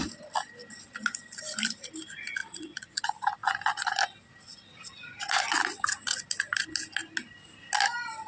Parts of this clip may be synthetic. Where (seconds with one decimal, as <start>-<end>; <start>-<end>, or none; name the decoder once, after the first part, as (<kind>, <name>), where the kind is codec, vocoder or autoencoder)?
2.4-3.0 (vocoder, Vocos)